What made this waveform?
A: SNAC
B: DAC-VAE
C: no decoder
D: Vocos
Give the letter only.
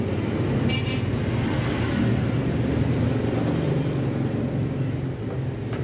C